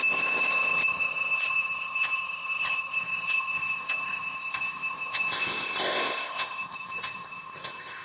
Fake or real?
fake